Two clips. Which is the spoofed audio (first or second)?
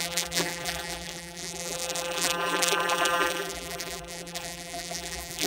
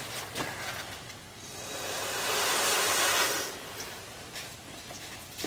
first